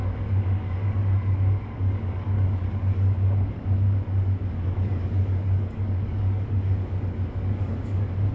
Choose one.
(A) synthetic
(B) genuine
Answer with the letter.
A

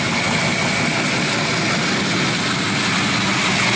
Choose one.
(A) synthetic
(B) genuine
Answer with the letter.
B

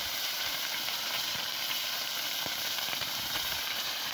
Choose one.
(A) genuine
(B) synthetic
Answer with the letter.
B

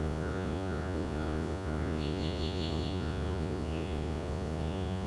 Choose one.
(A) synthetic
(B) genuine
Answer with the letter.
A